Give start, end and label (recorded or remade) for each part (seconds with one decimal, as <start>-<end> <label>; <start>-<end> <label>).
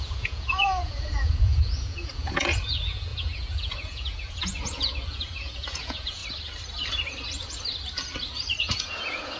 0.0-6.2 remade; 6.2-8.6 recorded; 8.6-9.4 remade